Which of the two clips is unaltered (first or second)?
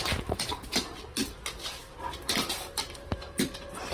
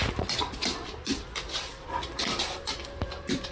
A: second